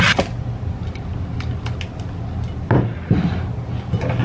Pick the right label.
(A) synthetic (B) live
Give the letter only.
B